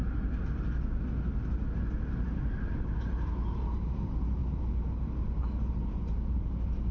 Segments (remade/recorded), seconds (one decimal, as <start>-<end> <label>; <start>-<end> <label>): 0.0-4.4 recorded; 4.4-5.7 remade; 5.7-6.9 recorded